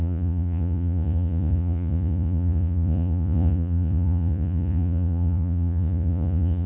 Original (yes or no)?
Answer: no